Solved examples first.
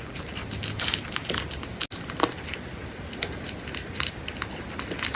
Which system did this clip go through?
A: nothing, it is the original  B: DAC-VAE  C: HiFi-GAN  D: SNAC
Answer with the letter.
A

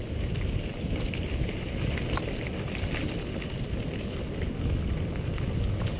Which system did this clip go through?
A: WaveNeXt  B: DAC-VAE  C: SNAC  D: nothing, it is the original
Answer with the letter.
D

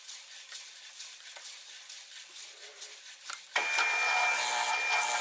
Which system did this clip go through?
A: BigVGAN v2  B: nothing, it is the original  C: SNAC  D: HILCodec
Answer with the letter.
B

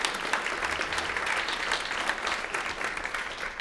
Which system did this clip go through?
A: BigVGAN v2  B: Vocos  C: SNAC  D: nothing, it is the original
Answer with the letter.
D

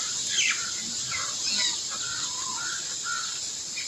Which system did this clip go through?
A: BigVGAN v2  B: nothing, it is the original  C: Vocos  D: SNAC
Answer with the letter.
B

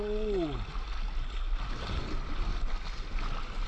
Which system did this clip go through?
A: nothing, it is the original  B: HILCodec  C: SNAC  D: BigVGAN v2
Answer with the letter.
A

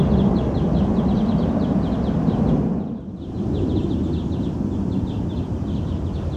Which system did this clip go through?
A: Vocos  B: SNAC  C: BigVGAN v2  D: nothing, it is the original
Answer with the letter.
D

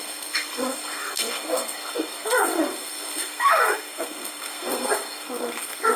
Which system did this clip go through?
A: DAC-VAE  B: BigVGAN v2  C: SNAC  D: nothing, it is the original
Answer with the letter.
C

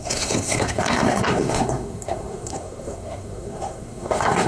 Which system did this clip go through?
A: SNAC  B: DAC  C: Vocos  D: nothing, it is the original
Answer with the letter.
A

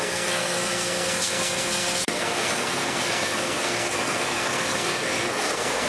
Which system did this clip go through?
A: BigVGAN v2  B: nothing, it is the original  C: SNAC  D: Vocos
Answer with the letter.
C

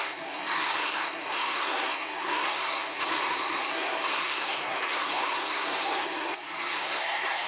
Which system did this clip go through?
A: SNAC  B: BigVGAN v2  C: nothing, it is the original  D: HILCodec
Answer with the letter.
A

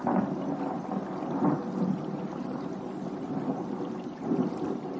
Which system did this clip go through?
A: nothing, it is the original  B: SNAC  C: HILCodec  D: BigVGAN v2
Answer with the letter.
A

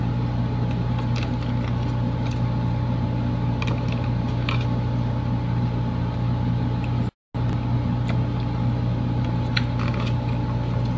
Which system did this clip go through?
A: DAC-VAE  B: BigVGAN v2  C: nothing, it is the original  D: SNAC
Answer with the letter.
C